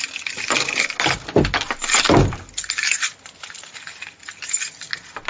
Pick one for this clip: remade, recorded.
recorded